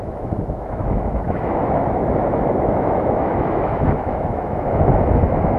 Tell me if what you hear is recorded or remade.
remade